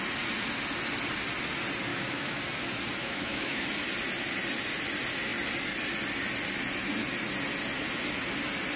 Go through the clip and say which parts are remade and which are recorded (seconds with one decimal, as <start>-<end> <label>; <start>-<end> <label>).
0.0-1.9 recorded; 1.9-2.4 remade; 2.4-3.0 recorded; 3.0-3.6 remade; 3.6-8.8 recorded